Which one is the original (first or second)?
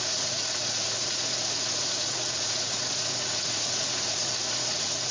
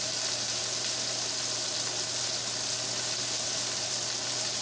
second